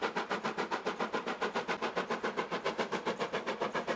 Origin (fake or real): real